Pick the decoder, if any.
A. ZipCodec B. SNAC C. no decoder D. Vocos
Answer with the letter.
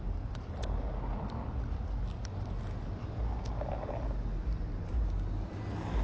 C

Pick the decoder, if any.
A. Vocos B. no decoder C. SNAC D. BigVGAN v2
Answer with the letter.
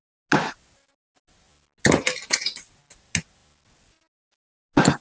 B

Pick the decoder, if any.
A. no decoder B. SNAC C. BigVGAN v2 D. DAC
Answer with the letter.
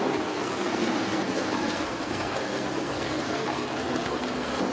B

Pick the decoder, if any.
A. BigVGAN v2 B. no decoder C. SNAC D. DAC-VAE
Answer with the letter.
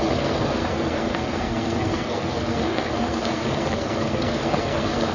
C